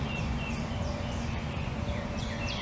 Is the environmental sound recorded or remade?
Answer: remade